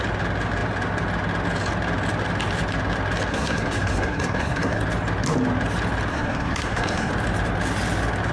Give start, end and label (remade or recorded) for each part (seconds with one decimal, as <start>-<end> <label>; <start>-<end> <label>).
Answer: 0.0-3.3 recorded; 3.3-4.8 remade; 4.8-6.1 recorded; 6.1-7.1 remade; 7.1-8.3 recorded